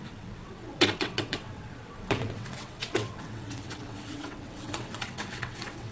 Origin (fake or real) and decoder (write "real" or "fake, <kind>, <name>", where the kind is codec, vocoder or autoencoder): fake, vocoder, WaveNeXt